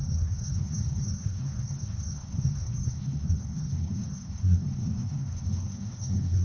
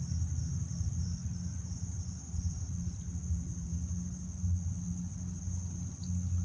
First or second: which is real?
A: second